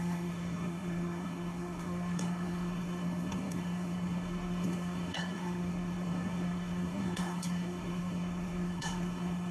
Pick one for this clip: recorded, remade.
remade